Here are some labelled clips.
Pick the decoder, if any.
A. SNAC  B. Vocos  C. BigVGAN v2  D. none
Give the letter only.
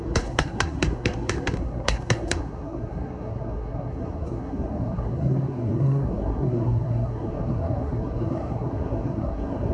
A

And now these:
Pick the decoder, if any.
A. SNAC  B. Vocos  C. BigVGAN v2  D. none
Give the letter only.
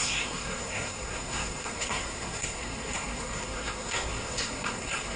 A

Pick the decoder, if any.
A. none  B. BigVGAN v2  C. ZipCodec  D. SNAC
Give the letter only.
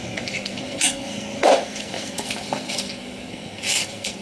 D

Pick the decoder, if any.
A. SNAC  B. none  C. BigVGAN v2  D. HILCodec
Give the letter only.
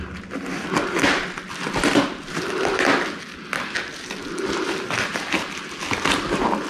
B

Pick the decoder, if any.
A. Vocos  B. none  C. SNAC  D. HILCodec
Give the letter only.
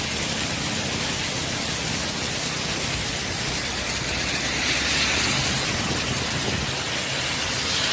B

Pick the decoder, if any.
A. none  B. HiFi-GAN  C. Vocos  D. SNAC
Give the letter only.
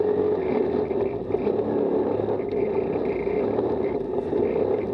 A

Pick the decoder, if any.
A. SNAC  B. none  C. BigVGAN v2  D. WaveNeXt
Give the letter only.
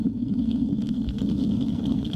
A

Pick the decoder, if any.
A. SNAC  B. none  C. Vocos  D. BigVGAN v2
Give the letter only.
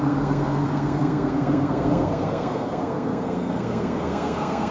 A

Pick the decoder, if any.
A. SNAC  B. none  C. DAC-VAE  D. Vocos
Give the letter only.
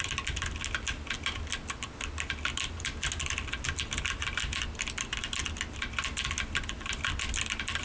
B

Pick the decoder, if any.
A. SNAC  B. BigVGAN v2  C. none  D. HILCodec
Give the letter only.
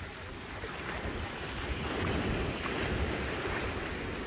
C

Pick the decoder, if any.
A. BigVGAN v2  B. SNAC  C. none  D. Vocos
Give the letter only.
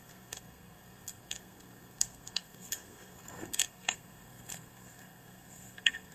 B